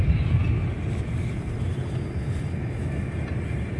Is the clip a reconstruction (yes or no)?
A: no